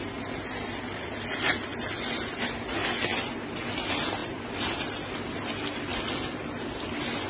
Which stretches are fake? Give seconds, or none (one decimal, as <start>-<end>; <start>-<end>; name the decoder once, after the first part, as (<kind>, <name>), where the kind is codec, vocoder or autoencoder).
none